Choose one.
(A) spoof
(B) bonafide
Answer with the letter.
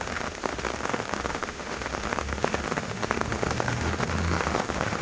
A